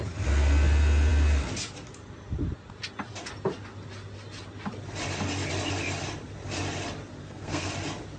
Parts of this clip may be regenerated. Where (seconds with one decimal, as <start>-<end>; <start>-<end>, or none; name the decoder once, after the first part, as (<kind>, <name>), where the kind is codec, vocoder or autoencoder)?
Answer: 7.2-7.7 (codec, SNAC)